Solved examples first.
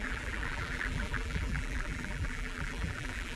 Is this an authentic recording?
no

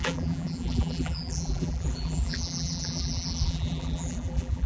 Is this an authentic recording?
no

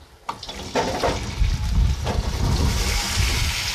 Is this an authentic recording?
no